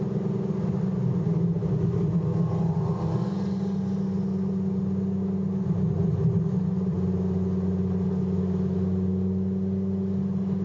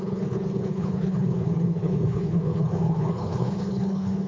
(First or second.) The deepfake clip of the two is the second